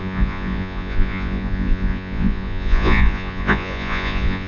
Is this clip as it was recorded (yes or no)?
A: no